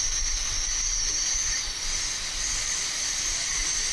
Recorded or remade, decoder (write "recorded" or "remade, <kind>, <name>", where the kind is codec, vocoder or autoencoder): recorded